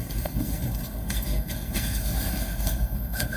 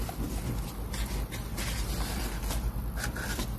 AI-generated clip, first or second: first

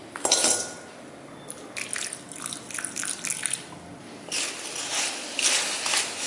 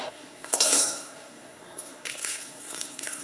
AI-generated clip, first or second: second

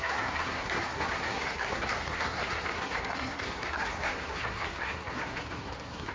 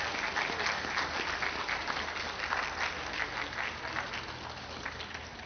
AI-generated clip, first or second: first